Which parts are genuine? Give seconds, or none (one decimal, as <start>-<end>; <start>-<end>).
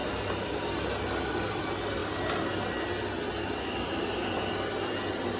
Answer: 0.0-5.4